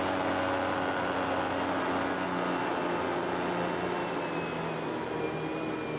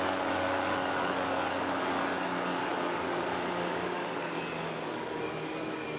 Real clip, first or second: first